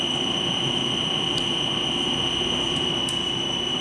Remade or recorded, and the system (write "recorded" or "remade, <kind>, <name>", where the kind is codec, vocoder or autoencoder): remade, vocoder, BigVGAN v2